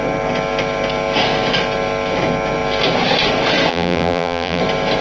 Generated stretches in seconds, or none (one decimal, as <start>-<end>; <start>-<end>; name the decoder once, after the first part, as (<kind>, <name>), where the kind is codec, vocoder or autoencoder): 3.7-4.6 (vocoder, BigVGAN v2)